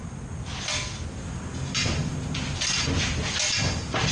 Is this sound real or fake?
real